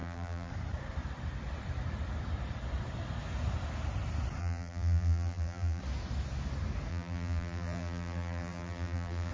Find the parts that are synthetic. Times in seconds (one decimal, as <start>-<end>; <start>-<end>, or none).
0.0-0.5; 4.4-5.8; 6.9-9.3